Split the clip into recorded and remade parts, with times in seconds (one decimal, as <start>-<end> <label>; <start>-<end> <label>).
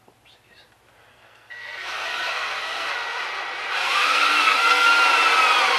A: 0.0-1.1 recorded; 1.1-2.9 remade; 2.9-3.8 recorded; 3.8-4.9 remade; 4.9-5.8 recorded